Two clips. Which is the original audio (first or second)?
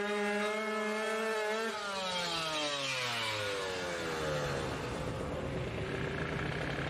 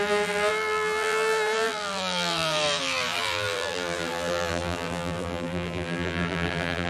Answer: first